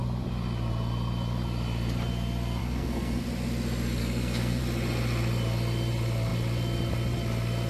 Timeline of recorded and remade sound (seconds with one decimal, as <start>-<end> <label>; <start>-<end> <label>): 0.0-2.6 recorded; 2.6-3.2 remade; 3.2-4.0 recorded; 4.0-4.6 remade; 4.6-7.7 recorded